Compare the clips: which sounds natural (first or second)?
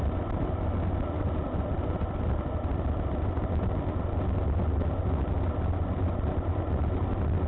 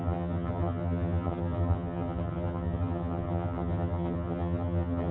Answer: first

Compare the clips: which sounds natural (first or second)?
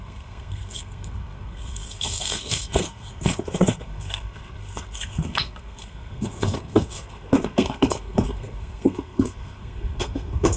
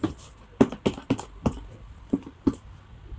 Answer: second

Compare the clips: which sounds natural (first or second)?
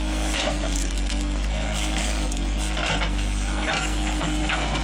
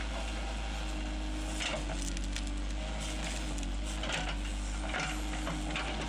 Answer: second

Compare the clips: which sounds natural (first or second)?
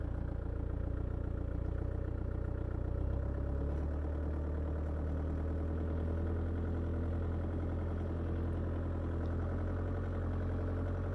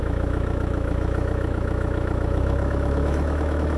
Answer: first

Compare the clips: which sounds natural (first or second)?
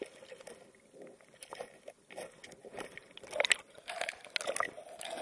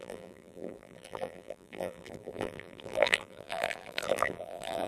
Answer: first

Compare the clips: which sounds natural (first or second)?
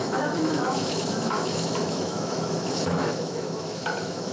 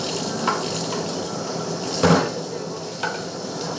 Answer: second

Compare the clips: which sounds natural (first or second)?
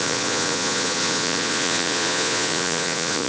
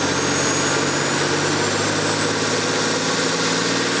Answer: second